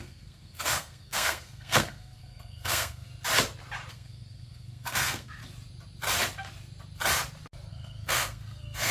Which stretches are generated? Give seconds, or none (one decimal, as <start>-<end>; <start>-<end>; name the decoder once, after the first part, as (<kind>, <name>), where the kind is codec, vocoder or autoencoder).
0.0-3.1 (codec, SNAC); 3.9-5.4; 7.7-8.9